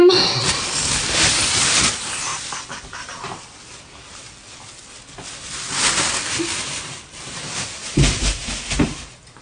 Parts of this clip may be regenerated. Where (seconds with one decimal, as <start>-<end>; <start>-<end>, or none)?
none